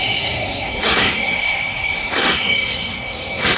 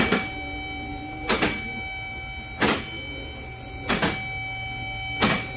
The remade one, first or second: first